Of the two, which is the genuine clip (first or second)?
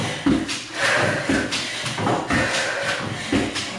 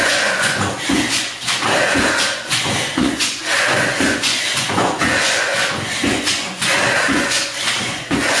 first